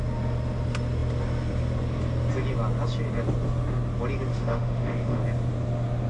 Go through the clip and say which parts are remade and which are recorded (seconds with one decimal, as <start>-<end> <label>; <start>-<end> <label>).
0.0-4.3 recorded; 4.3-5.2 remade; 5.2-6.1 recorded